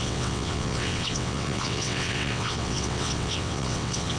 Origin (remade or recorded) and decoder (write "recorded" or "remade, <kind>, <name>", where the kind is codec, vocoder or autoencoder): remade, vocoder, WaveNeXt